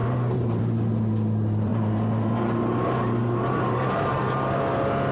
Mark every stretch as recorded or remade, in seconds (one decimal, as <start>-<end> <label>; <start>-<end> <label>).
0.0-0.6 remade; 0.6-1.7 recorded; 1.7-4.6 remade; 4.6-5.1 recorded